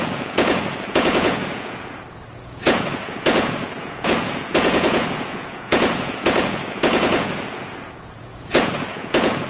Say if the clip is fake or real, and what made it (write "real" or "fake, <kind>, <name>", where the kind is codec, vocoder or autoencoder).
fake, vocoder, Vocos